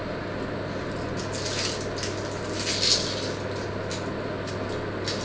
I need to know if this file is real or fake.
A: real